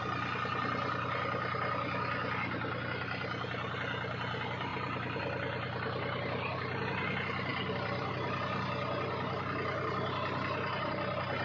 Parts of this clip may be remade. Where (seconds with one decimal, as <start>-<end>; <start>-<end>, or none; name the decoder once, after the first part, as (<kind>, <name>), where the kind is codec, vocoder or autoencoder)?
4.7-6.8 (vocoder, BigVGAN v2); 7.5-8.1